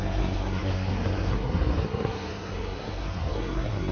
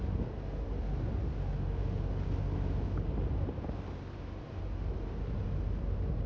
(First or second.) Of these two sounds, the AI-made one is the first